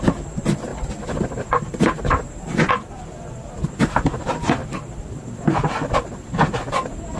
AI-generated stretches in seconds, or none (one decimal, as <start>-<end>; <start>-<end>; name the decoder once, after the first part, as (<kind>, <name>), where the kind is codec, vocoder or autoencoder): 0.0-0.7 (vocoder, BigVGAN v2); 1.6-4.6; 5.1-7.2